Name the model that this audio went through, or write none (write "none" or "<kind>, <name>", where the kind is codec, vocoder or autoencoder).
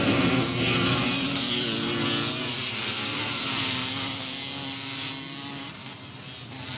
none